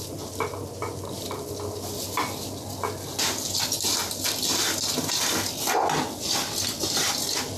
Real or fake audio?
real